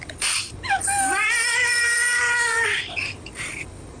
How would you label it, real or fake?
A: fake